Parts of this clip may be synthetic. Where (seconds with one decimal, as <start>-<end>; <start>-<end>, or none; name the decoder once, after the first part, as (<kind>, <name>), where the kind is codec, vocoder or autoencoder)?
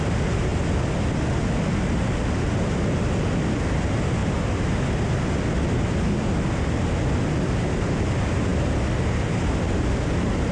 none